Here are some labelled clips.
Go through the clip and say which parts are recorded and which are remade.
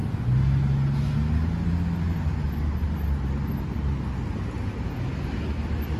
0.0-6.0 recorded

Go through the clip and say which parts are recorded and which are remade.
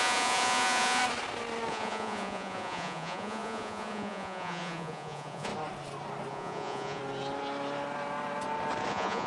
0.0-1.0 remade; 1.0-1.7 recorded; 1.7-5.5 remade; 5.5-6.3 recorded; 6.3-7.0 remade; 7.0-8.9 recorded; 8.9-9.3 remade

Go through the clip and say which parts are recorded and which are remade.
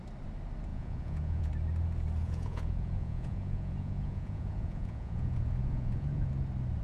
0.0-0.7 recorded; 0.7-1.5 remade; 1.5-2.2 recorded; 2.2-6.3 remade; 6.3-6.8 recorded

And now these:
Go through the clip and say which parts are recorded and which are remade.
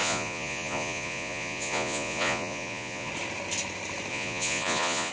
0.0-3.1 remade; 3.1-4.1 recorded; 4.1-5.1 remade